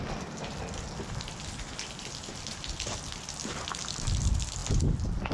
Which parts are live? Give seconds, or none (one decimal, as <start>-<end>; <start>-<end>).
0.0-3.4; 4.1-5.3